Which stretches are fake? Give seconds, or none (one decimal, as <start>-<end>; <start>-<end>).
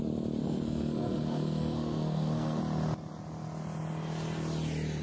0.4-2.6